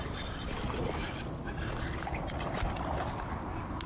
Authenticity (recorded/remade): recorded